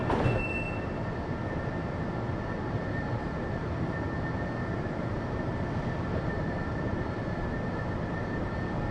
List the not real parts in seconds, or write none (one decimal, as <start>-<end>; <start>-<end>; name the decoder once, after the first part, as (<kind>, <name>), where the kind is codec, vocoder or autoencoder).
2.7-8.9 (vocoder, BigVGAN v2)